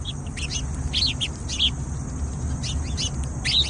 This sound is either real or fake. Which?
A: real